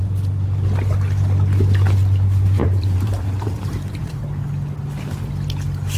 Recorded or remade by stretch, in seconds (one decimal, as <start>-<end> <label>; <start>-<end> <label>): 0.0-2.6 recorded; 2.6-4.2 remade; 4.2-6.0 recorded

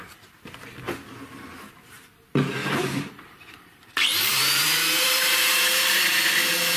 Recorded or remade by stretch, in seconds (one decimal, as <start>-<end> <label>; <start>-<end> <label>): 0.0-2.6 recorded; 2.6-6.0 remade; 6.0-6.8 recorded

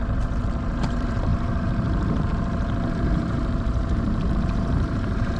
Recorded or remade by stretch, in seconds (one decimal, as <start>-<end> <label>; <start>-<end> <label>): 0.0-5.4 remade

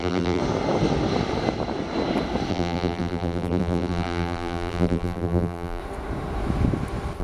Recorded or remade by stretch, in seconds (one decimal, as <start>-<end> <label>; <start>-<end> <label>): 0.0-0.4 remade; 0.4-2.5 recorded; 2.5-5.8 remade; 5.8-7.2 recorded